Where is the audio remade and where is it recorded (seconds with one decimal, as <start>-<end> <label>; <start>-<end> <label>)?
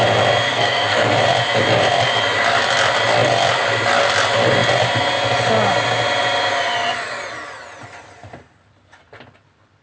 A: 0.0-0.5 recorded; 0.5-1.2 remade; 1.2-9.8 recorded